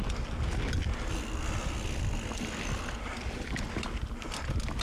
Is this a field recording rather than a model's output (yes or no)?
yes